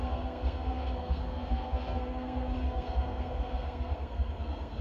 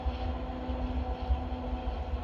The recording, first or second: second